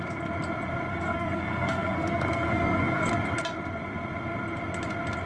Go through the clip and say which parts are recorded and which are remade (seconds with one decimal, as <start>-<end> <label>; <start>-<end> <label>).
0.0-0.9 recorded; 0.9-3.1 remade; 3.1-5.3 recorded